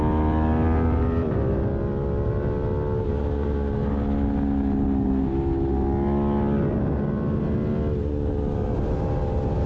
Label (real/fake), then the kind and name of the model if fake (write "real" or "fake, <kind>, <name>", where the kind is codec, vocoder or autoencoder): real